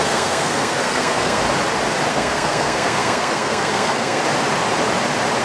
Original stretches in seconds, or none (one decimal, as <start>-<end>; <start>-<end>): 1.4-2.1; 4.2-5.4